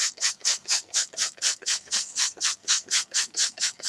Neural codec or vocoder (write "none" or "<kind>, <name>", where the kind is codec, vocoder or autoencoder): codec, SNAC